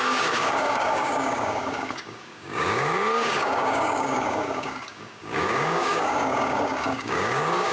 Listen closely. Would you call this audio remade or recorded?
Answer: remade